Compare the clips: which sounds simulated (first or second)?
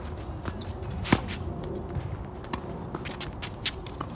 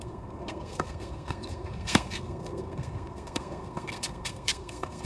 second